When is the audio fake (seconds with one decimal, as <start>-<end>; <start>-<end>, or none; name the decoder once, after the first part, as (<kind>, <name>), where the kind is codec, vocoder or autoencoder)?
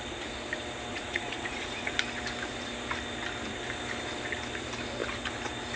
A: 0.9-1.9 (vocoder, Vocos)